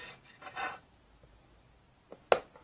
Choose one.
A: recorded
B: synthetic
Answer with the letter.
A